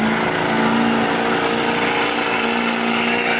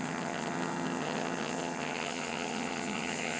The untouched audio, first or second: first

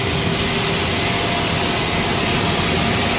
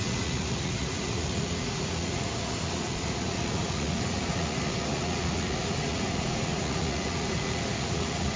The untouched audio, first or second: first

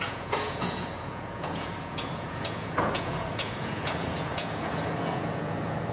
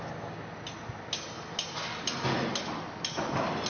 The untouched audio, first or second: second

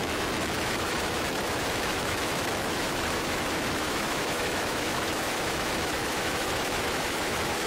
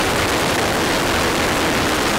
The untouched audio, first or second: second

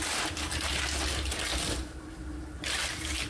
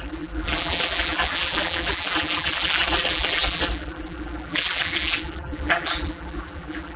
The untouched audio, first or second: first